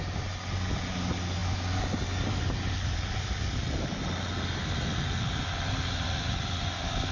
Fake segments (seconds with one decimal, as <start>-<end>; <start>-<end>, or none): none